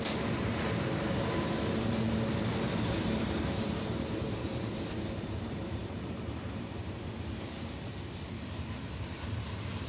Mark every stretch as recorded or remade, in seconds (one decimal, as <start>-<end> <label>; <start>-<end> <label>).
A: 0.0-9.9 remade